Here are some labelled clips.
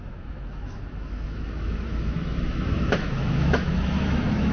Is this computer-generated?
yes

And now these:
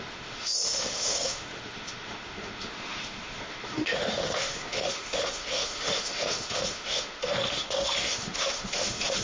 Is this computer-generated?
yes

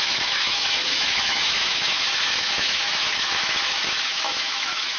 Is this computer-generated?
yes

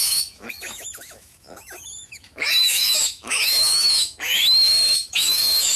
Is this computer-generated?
yes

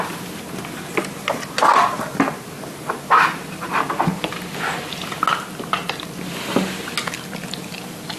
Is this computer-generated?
no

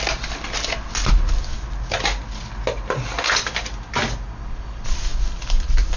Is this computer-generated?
no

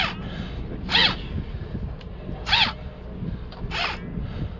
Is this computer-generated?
no